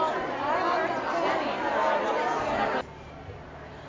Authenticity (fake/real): real